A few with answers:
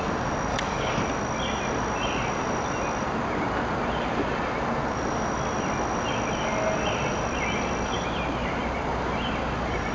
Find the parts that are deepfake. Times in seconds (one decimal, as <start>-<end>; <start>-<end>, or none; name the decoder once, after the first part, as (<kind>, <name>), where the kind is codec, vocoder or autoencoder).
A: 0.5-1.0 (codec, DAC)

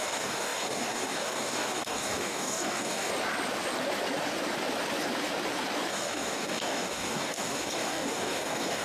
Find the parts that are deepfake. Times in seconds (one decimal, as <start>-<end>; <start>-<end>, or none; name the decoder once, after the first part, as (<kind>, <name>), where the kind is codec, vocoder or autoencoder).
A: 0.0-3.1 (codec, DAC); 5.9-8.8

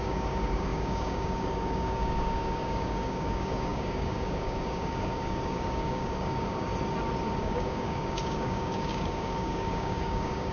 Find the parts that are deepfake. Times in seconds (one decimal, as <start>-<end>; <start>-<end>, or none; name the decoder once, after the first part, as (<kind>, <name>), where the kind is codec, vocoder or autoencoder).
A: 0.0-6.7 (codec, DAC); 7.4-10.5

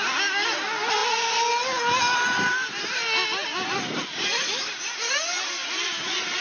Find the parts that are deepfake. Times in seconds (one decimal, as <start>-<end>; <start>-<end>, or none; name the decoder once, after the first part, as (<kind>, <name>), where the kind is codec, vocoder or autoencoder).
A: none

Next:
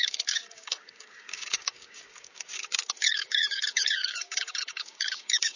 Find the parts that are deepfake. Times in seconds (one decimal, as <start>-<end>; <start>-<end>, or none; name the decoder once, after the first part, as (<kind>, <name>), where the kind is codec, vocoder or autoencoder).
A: 0.0-5.6 (codec, DAC)